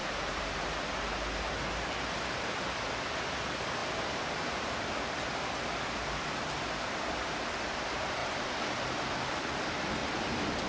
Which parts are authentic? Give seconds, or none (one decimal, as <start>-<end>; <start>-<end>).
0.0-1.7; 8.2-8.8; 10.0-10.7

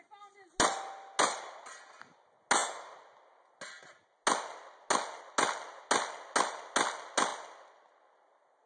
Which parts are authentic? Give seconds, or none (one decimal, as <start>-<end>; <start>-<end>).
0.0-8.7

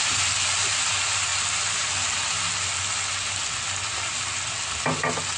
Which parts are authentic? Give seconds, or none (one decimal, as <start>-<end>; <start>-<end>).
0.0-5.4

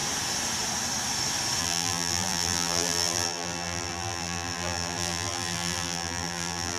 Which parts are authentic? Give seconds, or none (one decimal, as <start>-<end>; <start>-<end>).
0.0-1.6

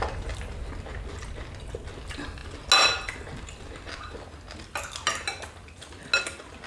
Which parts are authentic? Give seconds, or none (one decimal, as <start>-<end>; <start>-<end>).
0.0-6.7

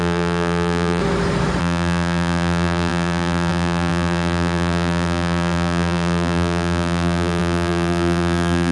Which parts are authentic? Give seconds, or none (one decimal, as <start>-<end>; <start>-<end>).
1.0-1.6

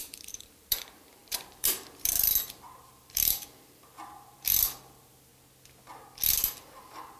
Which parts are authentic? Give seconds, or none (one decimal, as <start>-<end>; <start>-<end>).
5.3-6.3

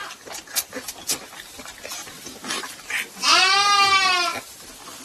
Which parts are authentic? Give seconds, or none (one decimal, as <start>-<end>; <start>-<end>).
3.3-5.0